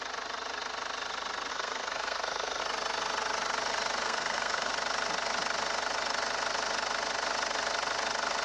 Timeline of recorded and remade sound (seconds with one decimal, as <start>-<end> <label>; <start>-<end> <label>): 0.0-1.5 recorded; 1.5-2.6 remade; 2.6-4.0 recorded; 4.0-4.7 remade; 4.7-8.4 recorded